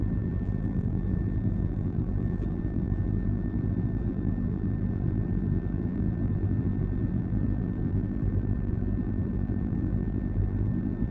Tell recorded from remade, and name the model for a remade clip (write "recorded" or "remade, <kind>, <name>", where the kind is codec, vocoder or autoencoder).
remade, vocoder, BigVGAN v2